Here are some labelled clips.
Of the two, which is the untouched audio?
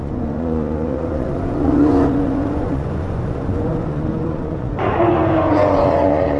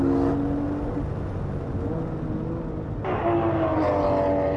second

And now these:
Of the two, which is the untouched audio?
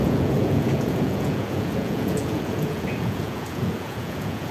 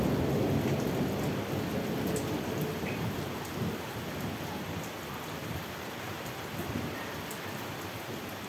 second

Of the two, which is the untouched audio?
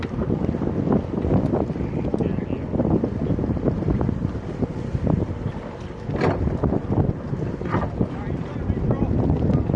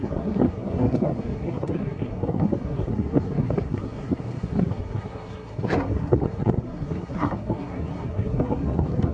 first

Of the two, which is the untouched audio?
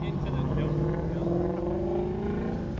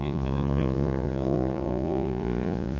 first